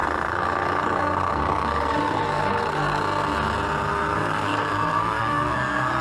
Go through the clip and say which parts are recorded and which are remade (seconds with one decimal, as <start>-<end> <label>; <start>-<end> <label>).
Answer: 0.0-3.0 remade; 3.0-3.9 recorded; 3.9-6.0 remade